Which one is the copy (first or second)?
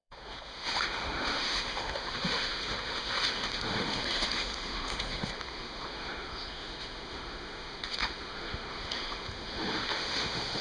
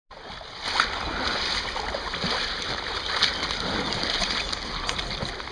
first